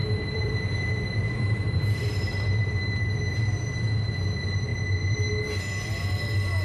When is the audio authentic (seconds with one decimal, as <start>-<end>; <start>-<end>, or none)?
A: 3.4-6.6

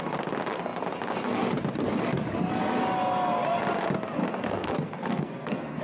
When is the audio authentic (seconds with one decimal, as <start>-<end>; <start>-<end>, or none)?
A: 0.0-4.2